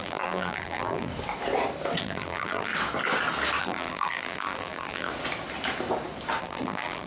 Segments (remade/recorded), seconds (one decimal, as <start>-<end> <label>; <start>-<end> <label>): 0.0-1.1 remade; 1.1-2.0 recorded; 2.0-2.7 remade; 2.7-3.6 recorded; 3.6-5.1 remade; 5.1-6.4 recorded; 6.4-7.1 remade